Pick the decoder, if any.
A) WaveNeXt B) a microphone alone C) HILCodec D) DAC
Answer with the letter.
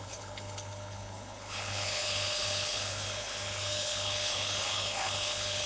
C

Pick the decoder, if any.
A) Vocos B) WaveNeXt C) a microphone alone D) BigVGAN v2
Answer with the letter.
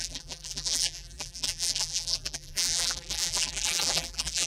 D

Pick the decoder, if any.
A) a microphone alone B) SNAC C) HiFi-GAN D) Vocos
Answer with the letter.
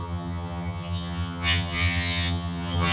C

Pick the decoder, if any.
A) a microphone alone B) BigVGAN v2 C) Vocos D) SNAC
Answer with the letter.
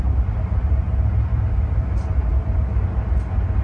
B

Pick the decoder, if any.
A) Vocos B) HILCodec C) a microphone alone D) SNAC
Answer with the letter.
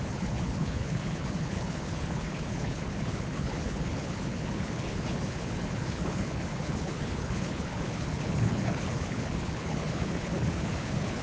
B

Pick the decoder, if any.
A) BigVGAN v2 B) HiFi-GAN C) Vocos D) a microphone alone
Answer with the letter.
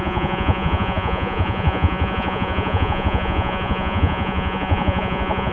C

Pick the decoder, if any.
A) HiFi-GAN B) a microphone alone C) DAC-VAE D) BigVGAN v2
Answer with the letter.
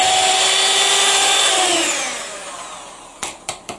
B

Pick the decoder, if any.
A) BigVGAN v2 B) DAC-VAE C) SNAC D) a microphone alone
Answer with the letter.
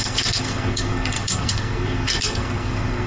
C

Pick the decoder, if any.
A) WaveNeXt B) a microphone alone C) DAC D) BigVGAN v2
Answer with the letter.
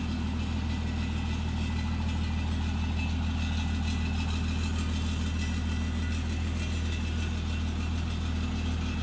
B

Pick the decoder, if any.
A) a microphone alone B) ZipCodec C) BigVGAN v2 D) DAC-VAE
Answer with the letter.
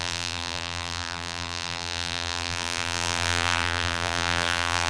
C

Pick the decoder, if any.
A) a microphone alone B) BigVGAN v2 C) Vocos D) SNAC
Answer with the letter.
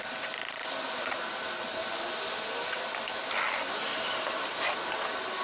A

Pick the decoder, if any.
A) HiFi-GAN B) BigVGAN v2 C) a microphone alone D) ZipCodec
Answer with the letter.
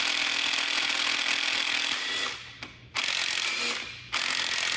C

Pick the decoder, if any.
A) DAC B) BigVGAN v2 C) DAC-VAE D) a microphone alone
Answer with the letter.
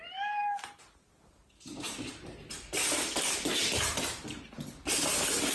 D